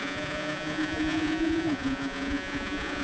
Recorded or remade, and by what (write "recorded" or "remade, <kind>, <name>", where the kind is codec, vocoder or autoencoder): remade, vocoder, Vocos